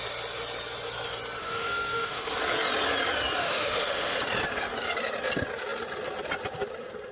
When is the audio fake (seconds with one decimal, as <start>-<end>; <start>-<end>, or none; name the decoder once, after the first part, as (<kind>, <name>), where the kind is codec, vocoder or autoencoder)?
1.4-2.3 (autoencoder, DAC-VAE); 3.4-4.2